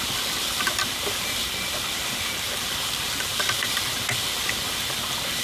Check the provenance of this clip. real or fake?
fake